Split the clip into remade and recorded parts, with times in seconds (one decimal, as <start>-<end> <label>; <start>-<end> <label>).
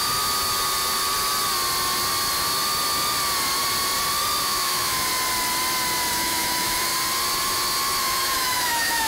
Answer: 0.0-4.4 recorded; 4.4-5.1 remade; 5.1-6.1 recorded; 6.1-6.9 remade; 6.9-8.0 recorded; 8.0-9.1 remade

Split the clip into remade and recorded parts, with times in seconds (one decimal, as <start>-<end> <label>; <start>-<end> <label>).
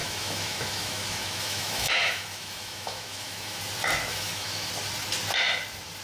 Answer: 0.0-3.6 remade; 3.6-4.1 recorded; 4.1-4.7 remade; 4.7-6.0 recorded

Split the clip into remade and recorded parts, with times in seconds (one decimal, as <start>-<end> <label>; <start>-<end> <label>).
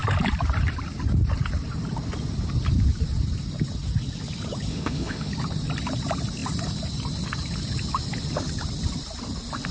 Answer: 0.0-4.7 recorded; 4.7-5.3 remade; 5.3-9.7 recorded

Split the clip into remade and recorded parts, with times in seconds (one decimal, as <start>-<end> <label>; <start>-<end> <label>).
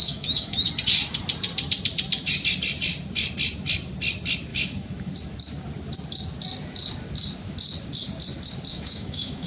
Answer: 0.0-0.7 remade; 0.7-4.5 recorded; 4.5-5.1 remade; 5.1-8.7 recorded; 8.7-9.5 remade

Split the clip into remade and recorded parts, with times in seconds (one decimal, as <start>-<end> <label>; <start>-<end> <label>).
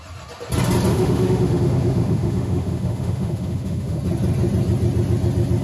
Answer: 0.0-0.9 recorded; 0.9-4.0 remade; 4.0-5.6 recorded